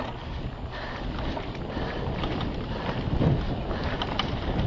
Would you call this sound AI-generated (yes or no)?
no